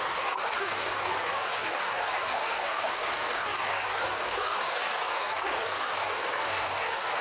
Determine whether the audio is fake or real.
fake